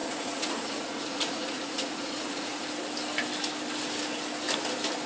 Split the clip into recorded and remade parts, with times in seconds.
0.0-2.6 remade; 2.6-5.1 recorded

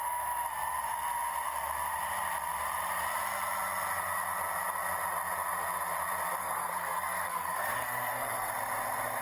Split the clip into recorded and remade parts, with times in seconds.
0.0-6.4 recorded; 6.4-8.5 remade; 8.5-9.2 recorded

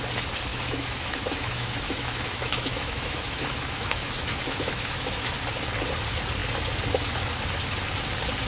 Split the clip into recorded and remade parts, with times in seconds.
0.0-0.5 recorded; 0.5-5.3 remade; 5.3-8.5 recorded

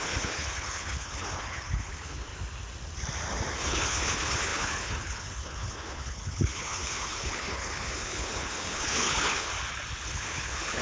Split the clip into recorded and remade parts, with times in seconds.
0.0-2.3 remade; 2.3-3.6 recorded; 3.6-9.5 remade; 9.5-10.1 recorded; 10.1-10.8 remade

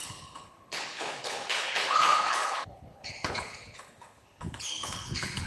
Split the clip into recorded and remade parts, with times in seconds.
0.0-5.5 remade